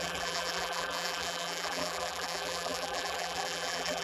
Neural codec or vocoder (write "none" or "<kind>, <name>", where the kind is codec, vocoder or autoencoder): vocoder, BigVGAN v2